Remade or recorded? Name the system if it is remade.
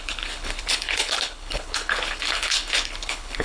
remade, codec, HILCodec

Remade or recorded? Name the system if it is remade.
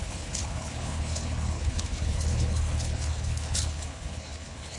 remade, codec, HILCodec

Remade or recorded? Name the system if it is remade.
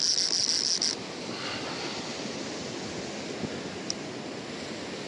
recorded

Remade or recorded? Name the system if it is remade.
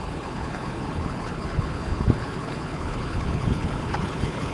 remade, codec, HILCodec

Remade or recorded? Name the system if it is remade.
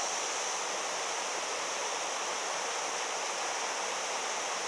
recorded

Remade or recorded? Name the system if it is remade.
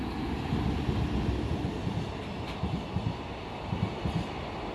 recorded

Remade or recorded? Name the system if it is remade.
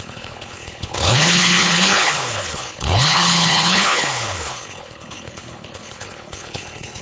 remade, codec, HILCodec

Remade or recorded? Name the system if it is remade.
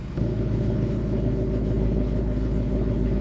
remade, codec, HILCodec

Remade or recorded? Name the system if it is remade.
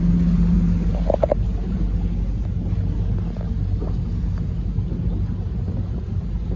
recorded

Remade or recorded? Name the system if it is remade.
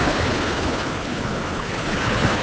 remade, codec, HILCodec